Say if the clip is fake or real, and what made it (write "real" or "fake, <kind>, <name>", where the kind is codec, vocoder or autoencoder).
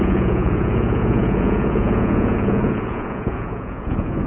fake, vocoder, Vocos